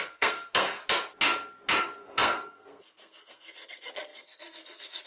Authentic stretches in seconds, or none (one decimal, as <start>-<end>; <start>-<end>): 0.8-1.8